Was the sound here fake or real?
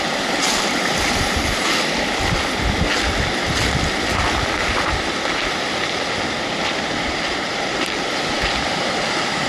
fake